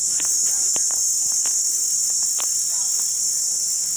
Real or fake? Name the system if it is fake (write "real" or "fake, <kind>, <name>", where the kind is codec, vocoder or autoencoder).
real